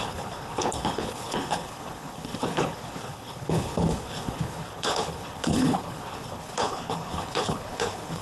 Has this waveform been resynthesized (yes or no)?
yes